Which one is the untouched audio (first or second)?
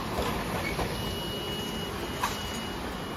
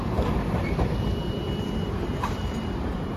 first